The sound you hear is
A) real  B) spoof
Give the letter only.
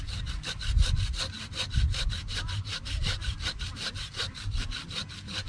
A